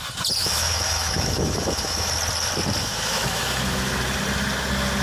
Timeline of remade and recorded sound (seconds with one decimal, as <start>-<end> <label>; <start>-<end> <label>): 0.0-0.4 recorded; 0.4-2.1 remade; 2.1-2.8 recorded; 2.8-4.0 remade; 4.0-5.0 recorded